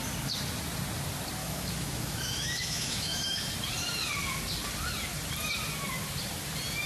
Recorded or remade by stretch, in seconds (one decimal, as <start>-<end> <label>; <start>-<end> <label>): 0.0-1.4 recorded; 1.4-3.4 remade; 3.4-6.9 recorded